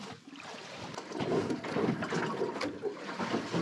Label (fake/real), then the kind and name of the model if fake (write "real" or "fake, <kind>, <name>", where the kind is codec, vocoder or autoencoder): real